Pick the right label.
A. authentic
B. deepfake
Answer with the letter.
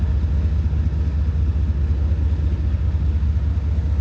A